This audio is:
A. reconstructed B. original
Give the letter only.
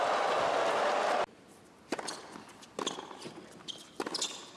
B